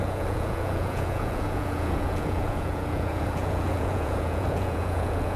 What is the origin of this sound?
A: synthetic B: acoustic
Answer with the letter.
A